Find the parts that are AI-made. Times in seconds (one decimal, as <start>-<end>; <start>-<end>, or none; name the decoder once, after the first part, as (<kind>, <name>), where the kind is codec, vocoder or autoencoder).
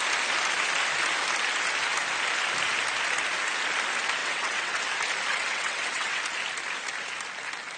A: 4.2-4.8 (vocoder, WaveNeXt); 5.3-6.2